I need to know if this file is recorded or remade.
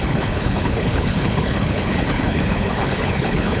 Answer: remade